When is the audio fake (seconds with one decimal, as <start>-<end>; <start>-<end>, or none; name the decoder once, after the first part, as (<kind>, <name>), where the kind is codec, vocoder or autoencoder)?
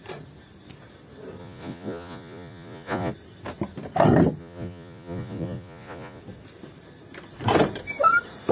1.4-3.1 (vocoder, Vocos); 4.4-6.2